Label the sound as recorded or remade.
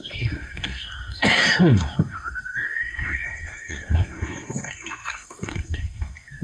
remade